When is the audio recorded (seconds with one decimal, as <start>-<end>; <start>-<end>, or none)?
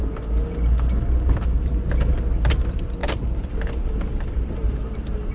0.0-5.3